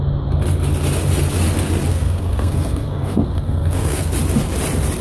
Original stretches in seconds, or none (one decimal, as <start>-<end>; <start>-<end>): 0.0-1.9; 4.1-5.0